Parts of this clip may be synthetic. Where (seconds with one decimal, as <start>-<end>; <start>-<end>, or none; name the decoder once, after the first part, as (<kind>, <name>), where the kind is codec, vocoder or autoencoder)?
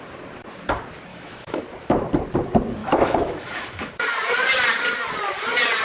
1.1-1.6 (autoencoder, DAC-VAE); 2.8-3.9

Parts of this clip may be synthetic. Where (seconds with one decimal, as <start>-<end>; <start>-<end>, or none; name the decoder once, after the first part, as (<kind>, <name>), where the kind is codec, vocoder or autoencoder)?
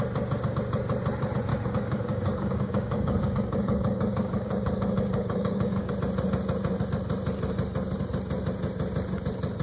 1.5-5.9 (codec, DAC)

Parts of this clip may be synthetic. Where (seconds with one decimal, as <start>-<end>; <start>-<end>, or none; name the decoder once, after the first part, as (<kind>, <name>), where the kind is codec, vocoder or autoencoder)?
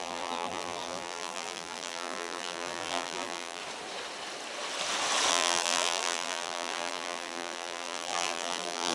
0.0-3.6 (vocoder, BigVGAN v2); 5.3-8.9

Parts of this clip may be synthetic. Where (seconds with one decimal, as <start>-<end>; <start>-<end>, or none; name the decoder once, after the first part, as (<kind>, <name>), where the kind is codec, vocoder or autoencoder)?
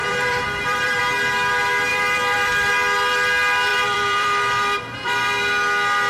0.0-1.0 (vocoder, BigVGAN v2); 1.9-2.7; 3.7-5.2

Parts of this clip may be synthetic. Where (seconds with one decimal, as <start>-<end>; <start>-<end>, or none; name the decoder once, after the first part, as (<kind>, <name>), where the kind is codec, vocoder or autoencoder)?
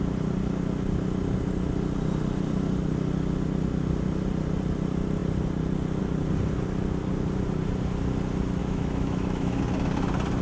8.6-9.6 (autoencoder, DAC-VAE)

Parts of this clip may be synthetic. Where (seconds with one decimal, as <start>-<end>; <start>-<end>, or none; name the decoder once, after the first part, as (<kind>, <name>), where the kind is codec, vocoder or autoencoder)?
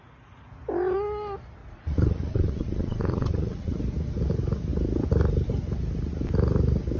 1.6-3.8 (vocoder, Vocos)